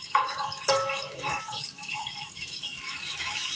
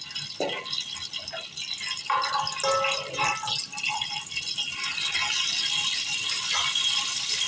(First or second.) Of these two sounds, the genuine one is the second